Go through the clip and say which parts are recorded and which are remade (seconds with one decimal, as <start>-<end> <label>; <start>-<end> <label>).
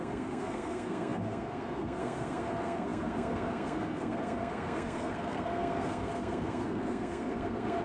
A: 0.0-7.8 remade